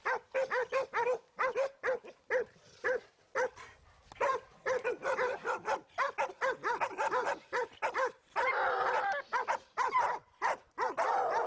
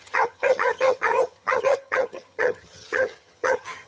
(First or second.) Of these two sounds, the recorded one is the first